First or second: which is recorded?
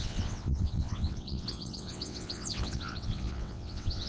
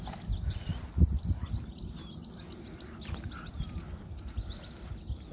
second